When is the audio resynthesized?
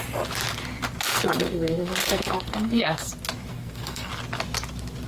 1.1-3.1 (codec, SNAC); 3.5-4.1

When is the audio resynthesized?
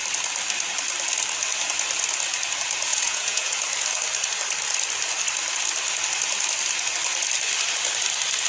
2.9-3.5 (vocoder, Vocos)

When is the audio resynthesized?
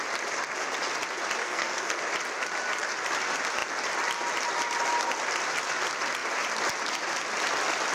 1.4-2.0 (codec, SNAC)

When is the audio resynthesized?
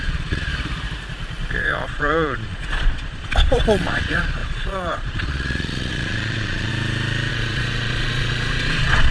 0.0-0.5 (vocoder, Vocos); 1.6-6.7; 7.3-9.1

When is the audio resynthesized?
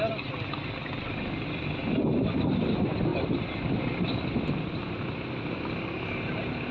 none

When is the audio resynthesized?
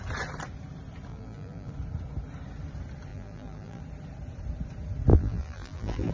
1.1-1.7 (vocoder, BigVGAN v2); 3.1-3.8; 5.1-6.1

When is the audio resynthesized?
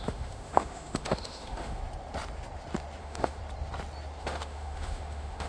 0.0-1.8 (autoencoder, DAC-VAE); 3.0-3.4; 4.2-5.5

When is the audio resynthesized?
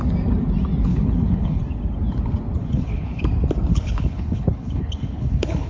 0.9-1.6 (codec, HILCodec); 2.6-3.2; 3.7-5.7